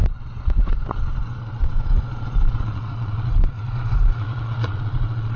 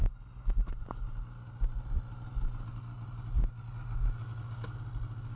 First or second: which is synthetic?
first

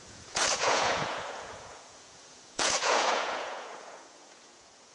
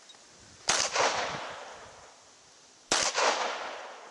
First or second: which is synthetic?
first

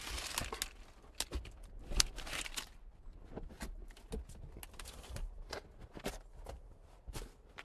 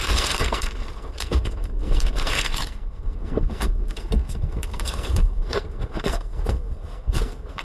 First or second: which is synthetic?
second